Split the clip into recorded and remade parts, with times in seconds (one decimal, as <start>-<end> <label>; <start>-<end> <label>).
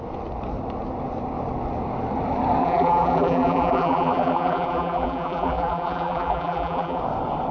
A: 0.0-2.6 recorded; 2.6-7.0 remade; 7.0-7.5 recorded